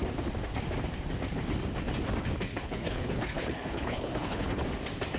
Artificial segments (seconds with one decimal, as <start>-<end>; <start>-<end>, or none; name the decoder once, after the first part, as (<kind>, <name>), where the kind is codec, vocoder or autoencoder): 2.5-4.6 (codec, HILCodec)